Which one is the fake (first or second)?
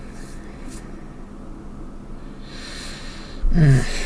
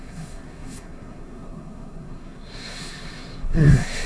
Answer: second